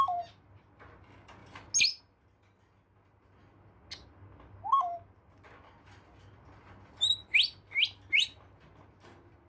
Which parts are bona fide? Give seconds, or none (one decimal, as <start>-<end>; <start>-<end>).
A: 0.0-9.5